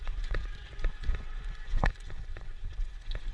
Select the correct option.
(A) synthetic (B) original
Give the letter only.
A